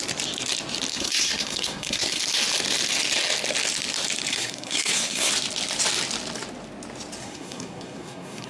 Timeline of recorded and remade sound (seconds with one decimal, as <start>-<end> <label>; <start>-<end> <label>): 0.0-0.9 recorded; 0.9-2.2 remade; 2.2-4.3 recorded; 4.3-5.3 remade; 5.3-7.2 recorded; 7.2-8.5 remade